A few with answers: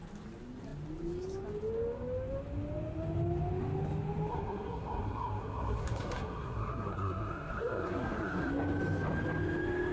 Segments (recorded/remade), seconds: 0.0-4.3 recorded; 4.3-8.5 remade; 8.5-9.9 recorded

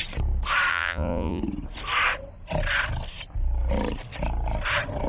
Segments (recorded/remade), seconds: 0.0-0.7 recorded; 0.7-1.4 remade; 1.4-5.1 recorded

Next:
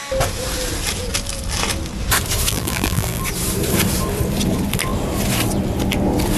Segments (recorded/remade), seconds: 0.0-2.5 recorded; 2.5-3.2 remade; 3.2-6.4 recorded